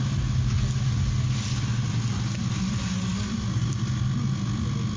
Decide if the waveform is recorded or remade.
recorded